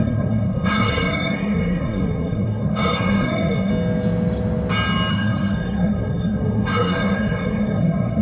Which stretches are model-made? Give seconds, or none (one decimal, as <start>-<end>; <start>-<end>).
0.0-3.7; 5.1-8.2